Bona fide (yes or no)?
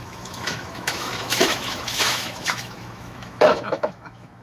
no